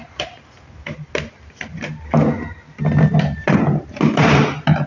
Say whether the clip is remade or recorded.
recorded